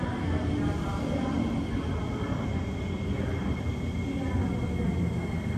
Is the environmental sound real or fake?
real